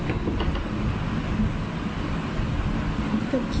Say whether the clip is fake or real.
real